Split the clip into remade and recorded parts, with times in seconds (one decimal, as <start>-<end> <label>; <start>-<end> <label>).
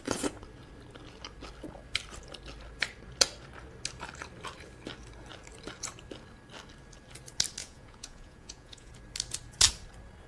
0.0-7.6 recorded; 7.6-8.9 remade; 8.9-10.3 recorded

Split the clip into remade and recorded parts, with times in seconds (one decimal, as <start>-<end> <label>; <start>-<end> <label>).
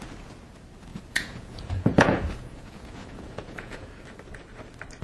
0.0-0.9 recorded; 0.9-3.9 remade; 3.9-5.0 recorded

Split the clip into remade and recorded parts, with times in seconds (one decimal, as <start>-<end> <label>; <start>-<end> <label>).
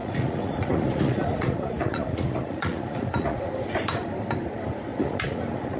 0.0-3.5 remade; 3.5-4.9 recorded; 4.9-5.8 remade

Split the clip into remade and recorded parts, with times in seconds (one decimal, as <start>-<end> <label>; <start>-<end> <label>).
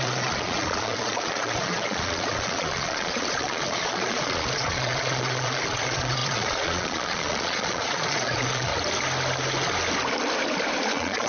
0.0-8.7 remade; 8.7-10.8 recorded; 10.8-11.3 remade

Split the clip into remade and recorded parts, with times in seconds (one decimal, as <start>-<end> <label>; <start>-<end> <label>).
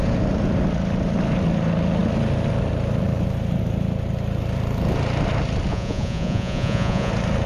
0.0-5.7 recorded; 5.7-7.1 remade; 7.1-7.5 recorded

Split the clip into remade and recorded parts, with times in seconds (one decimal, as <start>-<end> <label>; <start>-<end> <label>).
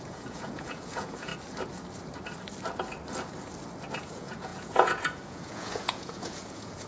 0.0-1.3 remade; 1.3-4.0 recorded; 4.0-6.9 remade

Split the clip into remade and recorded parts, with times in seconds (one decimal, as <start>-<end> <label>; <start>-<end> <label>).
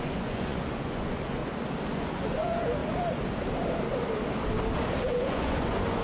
0.0-1.4 remade; 1.4-1.9 recorded; 1.9-2.8 remade; 2.8-5.1 recorded; 5.1-6.0 remade